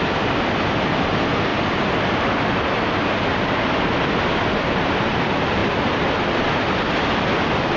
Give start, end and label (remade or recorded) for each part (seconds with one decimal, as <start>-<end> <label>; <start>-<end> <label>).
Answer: 0.0-7.8 recorded